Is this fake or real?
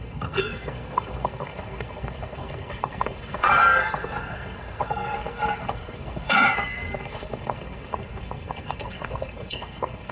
fake